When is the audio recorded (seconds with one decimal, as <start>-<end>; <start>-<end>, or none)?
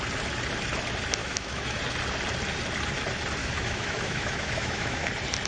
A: 0.0-1.2; 1.8-3.4; 5.1-5.5